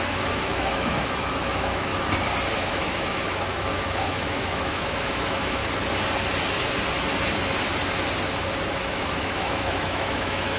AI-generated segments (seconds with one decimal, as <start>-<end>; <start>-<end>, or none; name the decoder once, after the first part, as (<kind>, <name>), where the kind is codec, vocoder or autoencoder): 0.0-1.9 (autoencoder, DAC-VAE); 2.5-5.6; 8.8-10.6